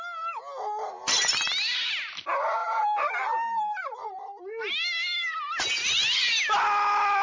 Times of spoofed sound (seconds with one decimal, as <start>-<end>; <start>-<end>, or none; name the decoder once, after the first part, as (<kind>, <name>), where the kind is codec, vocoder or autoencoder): 2.6-4.7 (vocoder, BigVGAN v2)